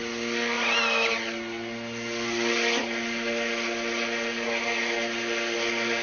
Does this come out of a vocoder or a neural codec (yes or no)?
no